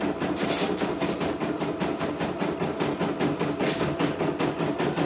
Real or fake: real